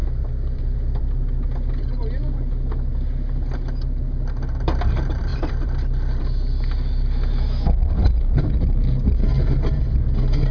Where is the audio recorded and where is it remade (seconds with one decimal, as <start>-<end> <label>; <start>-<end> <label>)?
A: 0.0-1.0 remade; 1.0-5.3 recorded; 5.3-6.2 remade; 6.2-10.5 recorded